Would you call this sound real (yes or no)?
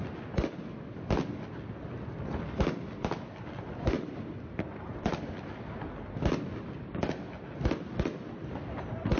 yes